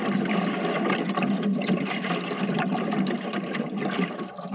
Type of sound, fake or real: real